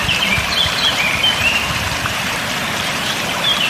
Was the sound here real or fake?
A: fake